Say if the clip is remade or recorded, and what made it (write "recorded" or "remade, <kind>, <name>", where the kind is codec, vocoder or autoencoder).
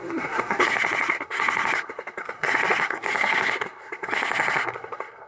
remade, codec, SNAC